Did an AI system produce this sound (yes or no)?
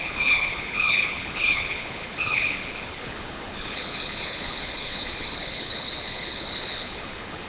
yes